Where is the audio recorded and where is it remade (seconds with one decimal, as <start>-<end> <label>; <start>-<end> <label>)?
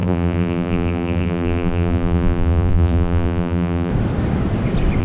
0.0-3.9 remade; 3.9-5.0 recorded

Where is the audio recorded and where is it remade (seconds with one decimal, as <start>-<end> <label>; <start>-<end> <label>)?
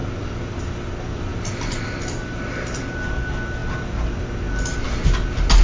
0.0-5.6 recorded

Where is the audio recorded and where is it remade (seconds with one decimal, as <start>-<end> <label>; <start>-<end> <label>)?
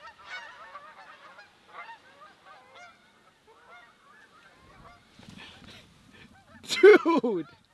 0.0-7.7 recorded